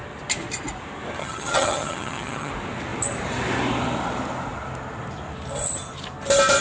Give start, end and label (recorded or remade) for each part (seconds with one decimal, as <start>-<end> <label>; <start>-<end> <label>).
0.0-1.2 recorded; 1.2-2.5 remade; 2.5-6.6 recorded